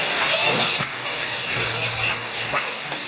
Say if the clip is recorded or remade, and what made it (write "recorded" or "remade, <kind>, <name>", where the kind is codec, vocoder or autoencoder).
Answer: remade, codec, DAC